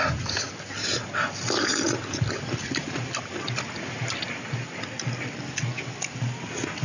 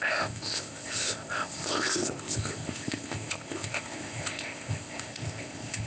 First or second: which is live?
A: first